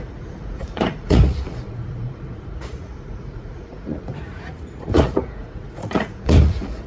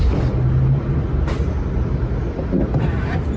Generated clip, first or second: first